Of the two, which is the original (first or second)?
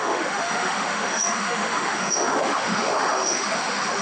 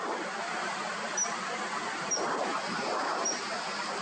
second